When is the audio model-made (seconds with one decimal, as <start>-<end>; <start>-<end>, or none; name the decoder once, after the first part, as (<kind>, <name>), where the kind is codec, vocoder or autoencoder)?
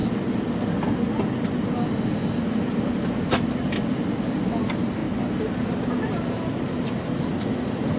none